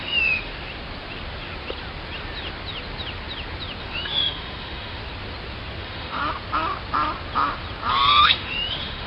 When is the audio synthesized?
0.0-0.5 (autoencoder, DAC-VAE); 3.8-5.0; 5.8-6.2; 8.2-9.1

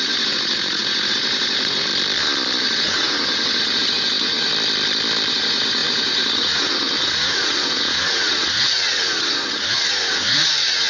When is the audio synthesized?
0.0-1.9 (vocoder, Vocos); 2.6-4.5; 5.3-10.9